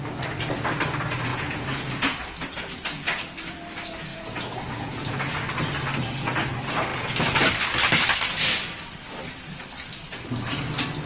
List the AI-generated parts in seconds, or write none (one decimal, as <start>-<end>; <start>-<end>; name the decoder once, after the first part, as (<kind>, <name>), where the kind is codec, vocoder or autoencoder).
1.3-2.2 (vocoder, Vocos); 4.1-5.4